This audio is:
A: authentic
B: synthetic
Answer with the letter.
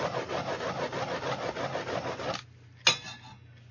A